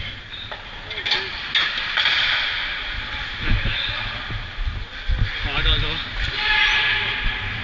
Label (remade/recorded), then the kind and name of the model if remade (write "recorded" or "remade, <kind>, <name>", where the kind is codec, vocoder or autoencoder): recorded